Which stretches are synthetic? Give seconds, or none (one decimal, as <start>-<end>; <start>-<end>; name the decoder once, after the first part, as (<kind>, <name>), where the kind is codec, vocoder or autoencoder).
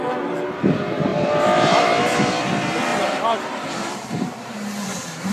2.9-5.3 (vocoder, BigVGAN v2)